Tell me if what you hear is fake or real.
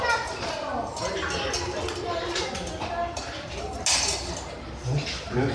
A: real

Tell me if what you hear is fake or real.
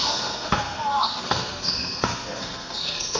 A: fake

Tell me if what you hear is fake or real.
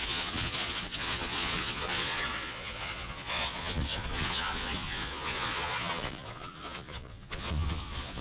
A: fake